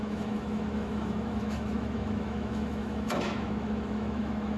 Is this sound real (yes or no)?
no